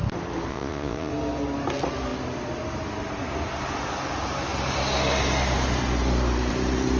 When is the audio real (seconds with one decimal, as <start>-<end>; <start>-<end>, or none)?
0.0-0.5; 1.1-7.0